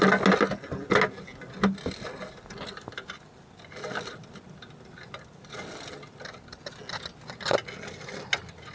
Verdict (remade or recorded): recorded